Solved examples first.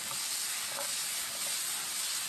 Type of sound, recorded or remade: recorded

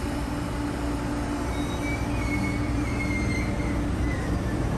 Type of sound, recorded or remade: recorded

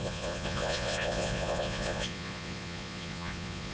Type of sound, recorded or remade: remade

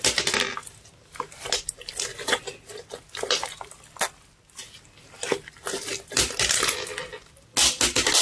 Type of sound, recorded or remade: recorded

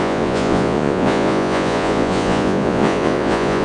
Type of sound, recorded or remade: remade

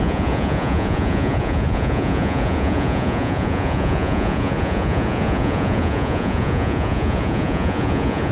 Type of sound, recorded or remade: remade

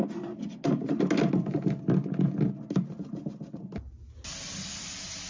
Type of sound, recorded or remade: recorded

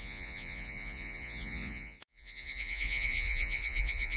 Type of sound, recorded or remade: remade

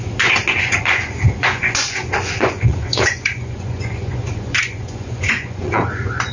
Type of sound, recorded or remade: remade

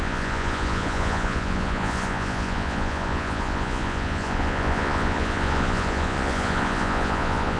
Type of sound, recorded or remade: remade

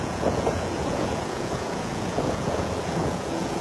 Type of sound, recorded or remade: remade